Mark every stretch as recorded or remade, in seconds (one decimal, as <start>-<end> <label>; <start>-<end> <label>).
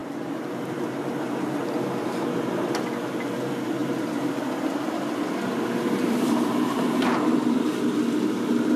0.0-3.8 recorded; 3.8-8.0 remade; 8.0-8.8 recorded